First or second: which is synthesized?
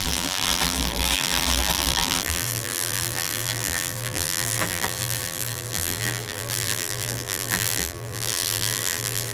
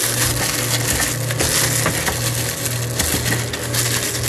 first